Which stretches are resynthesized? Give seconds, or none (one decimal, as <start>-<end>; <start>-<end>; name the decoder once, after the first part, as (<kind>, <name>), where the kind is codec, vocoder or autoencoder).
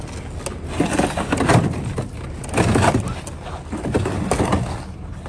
1.3-4.3 (vocoder, BigVGAN v2)